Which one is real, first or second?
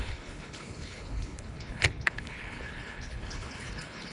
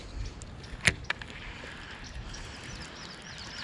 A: second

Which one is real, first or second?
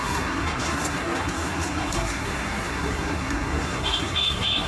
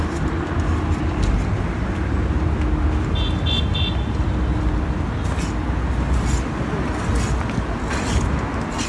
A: second